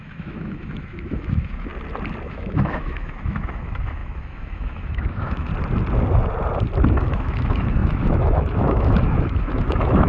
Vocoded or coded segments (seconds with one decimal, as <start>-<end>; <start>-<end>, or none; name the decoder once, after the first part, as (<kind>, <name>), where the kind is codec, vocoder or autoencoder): 0.0-1.7 (autoencoder, DAC-VAE); 2.3-5.5; 7.0-10.1